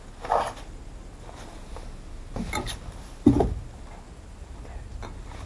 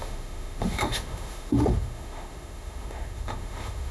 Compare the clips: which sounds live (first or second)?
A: first